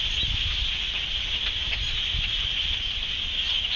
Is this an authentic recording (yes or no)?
yes